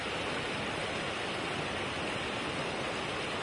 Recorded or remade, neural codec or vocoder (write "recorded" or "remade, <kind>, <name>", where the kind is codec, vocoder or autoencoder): recorded